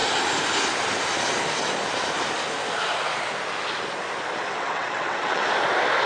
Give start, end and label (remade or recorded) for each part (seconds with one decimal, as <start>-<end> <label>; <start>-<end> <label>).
0.0-4.5 recorded; 4.5-5.5 remade; 5.5-6.1 recorded